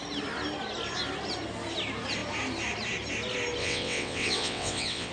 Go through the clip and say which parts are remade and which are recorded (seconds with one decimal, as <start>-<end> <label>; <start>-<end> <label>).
0.0-3.6 recorded; 3.6-5.1 remade